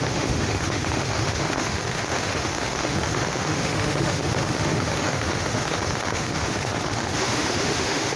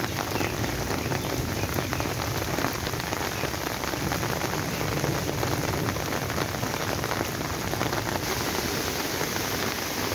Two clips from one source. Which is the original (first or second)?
second